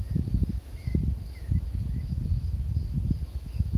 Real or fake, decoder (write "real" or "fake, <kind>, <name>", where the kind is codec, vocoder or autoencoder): fake, autoencoder, DAC-VAE